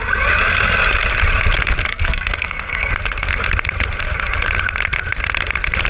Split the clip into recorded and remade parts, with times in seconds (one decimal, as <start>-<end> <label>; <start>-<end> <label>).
0.0-1.9 recorded; 1.9-2.9 remade; 2.9-5.9 recorded